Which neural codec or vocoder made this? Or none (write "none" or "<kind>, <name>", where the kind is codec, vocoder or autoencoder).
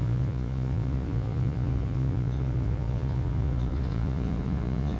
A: vocoder, Vocos